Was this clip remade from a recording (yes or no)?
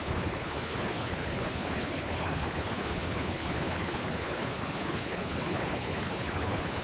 yes